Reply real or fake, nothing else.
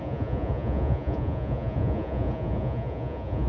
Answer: fake